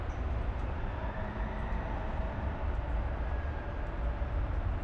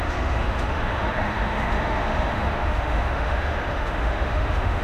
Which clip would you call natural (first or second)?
first